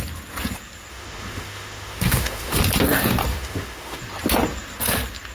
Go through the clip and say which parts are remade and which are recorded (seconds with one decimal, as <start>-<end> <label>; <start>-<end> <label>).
0.0-0.9 recorded; 0.9-2.6 remade; 2.6-3.3 recorded; 3.3-4.0 remade; 4.0-5.3 recorded